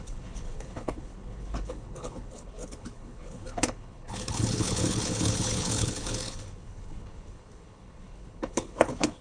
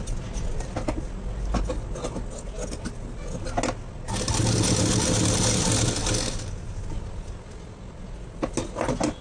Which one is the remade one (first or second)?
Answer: first